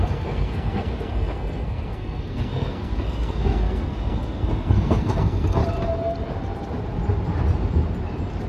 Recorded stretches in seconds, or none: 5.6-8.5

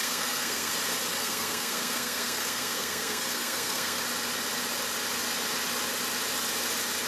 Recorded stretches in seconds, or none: 0.7-1.2; 4.0-7.1

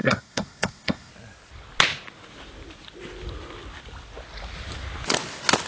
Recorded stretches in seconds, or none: 1.1-5.7